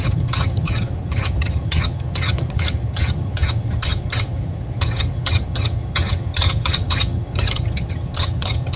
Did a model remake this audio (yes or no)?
yes